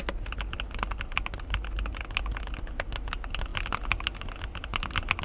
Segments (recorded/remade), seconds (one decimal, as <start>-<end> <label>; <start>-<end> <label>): 0.0-5.2 recorded